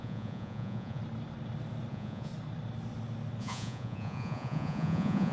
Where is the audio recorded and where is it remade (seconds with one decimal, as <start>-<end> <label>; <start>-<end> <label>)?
0.0-1.0 remade; 1.0-1.9 recorded; 1.9-2.3 remade; 2.3-3.4 recorded; 3.4-5.3 remade